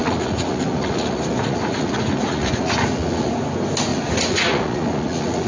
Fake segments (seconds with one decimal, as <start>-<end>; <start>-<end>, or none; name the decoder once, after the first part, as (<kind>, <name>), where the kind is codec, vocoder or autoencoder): 0.0-3.3 (vocoder, Vocos); 3.9-5.5